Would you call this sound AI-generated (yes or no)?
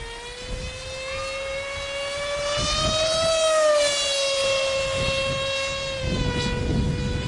no